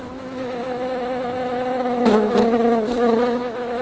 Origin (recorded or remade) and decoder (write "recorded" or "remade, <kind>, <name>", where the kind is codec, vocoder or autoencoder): remade, autoencoder, DAC-VAE